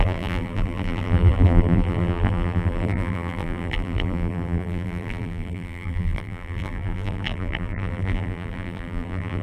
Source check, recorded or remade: remade